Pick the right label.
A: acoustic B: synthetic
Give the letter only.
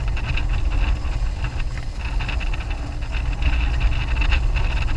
A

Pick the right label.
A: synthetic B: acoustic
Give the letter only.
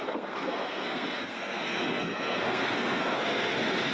A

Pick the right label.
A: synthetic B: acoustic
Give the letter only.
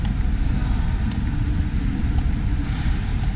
B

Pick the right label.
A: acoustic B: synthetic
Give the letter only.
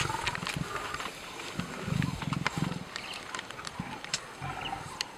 A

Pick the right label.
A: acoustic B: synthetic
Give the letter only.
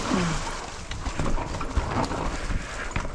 A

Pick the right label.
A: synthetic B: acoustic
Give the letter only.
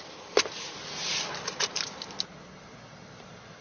B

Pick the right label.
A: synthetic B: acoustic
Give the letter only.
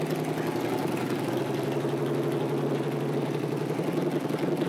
B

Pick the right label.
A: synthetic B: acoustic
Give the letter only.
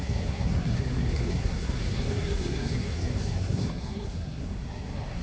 A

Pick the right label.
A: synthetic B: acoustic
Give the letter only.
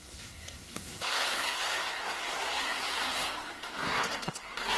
A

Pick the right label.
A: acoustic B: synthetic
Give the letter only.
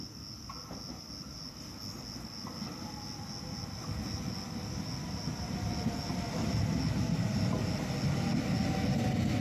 A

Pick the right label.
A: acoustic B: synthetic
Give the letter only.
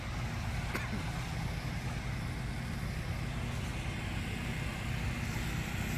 A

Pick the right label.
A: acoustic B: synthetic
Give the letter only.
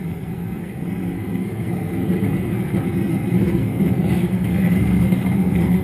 B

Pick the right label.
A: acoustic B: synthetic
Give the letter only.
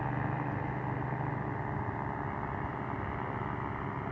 A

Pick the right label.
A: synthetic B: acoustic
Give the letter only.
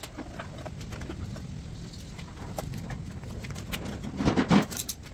B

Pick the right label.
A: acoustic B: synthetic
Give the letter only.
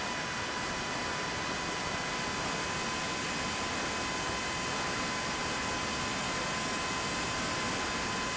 A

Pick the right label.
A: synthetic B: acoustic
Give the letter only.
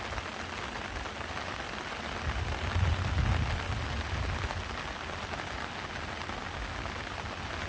B